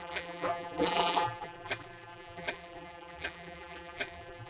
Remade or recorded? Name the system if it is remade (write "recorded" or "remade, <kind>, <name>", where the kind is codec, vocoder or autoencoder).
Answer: remade, vocoder, BigVGAN v2